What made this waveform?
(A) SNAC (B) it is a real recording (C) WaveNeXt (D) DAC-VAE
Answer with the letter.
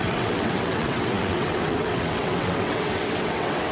C